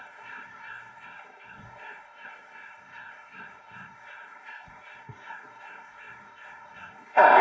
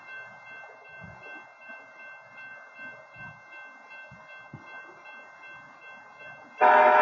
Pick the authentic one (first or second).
second